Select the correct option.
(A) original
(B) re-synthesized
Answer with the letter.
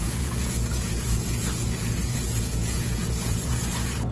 B